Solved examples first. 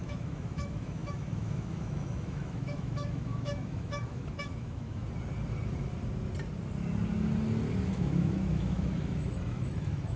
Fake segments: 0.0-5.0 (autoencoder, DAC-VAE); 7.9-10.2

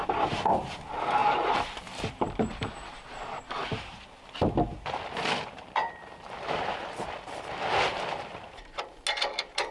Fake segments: 1.2-2.7 (vocoder, BigVGAN v2); 7.9-8.8

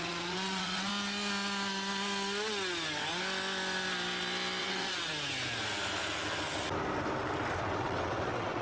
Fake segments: 0.0-0.9 (vocoder, WaveNeXt); 4.6-5.1; 7.6-8.6